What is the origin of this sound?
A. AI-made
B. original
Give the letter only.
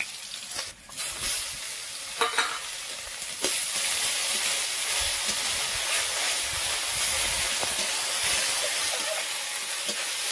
B